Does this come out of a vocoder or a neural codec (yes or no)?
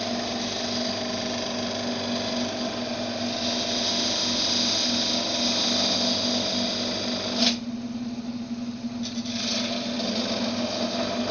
no